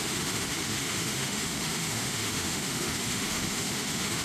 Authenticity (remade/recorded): remade